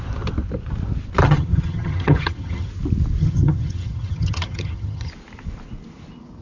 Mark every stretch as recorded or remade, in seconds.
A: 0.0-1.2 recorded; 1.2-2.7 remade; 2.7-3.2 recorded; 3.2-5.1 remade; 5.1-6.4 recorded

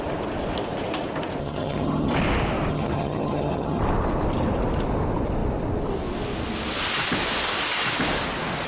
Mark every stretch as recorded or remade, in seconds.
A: 0.0-1.4 recorded; 1.4-2.1 remade; 2.1-2.7 recorded; 2.7-3.8 remade; 3.8-8.7 recorded

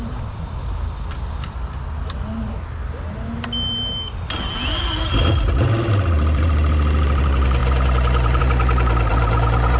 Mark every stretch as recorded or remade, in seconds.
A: 0.0-9.8 recorded

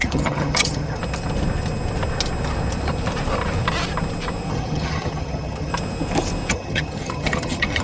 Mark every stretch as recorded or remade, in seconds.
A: 0.0-1.0 remade; 1.0-4.5 recorded; 4.5-5.7 remade; 5.7-6.5 recorded; 6.5-7.8 remade

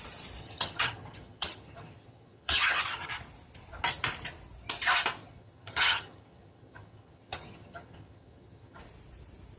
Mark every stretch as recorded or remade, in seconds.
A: 0.0-0.4 recorded; 0.4-3.1 remade; 3.1-5.2 recorded; 5.2-8.8 remade; 8.8-9.6 recorded

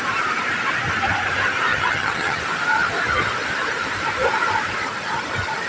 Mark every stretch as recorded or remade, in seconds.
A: 0.0-1.7 recorded; 1.7-2.4 remade; 2.4-5.7 recorded

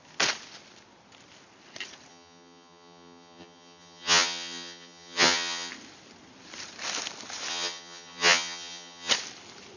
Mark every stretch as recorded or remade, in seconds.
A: 0.0-2.1 recorded; 2.1-5.7 remade; 5.7-7.5 recorded; 7.5-9.1 remade; 9.1-9.8 recorded